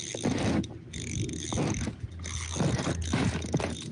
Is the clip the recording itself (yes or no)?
yes